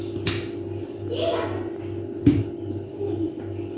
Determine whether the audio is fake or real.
real